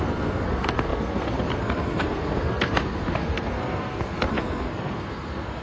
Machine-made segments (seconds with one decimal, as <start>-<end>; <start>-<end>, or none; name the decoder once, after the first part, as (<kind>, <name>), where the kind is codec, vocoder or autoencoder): 0.0-5.6 (codec, SNAC)